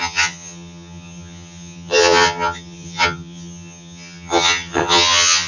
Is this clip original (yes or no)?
no